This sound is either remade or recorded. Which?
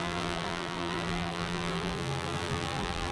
remade